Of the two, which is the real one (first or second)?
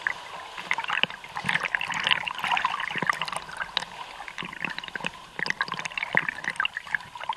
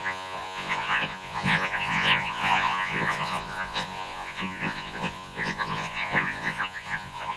first